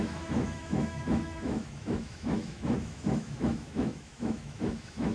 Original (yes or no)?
no